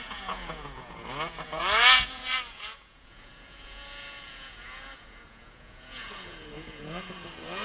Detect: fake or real fake